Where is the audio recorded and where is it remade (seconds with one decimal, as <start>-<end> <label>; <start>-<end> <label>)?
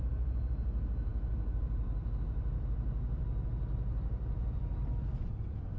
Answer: 0.0-1.1 recorded; 1.1-4.6 remade; 4.6-5.8 recorded